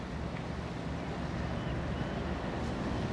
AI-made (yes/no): no